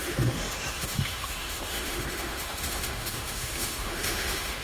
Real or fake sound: fake